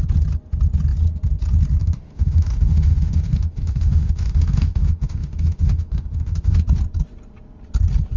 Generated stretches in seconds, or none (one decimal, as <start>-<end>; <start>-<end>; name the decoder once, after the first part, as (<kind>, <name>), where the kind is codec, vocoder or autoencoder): 1.8-6.6 (autoencoder, DAC-VAE)